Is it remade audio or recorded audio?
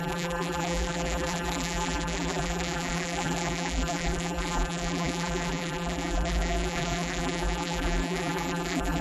remade